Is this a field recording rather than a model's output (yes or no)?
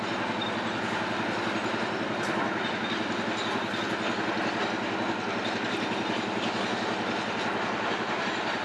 yes